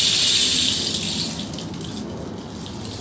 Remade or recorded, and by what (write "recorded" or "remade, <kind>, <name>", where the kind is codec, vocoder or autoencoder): recorded